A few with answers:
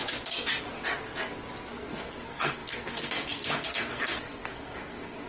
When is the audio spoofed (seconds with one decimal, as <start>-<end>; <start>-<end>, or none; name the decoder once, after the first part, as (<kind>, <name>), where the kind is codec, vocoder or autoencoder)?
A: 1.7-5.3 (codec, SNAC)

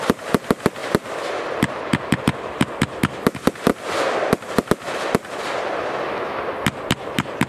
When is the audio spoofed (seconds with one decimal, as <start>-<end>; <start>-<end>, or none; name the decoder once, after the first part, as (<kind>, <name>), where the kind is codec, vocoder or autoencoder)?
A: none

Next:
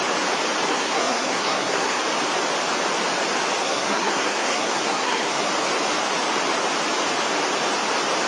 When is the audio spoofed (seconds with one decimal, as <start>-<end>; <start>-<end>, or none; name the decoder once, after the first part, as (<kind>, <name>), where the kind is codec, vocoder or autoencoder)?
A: 0.7-2.0 (codec, SNAC); 3.6-5.5